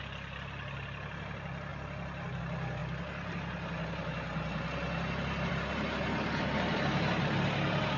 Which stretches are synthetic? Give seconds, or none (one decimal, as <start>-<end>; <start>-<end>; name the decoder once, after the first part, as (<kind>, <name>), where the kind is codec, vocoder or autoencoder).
none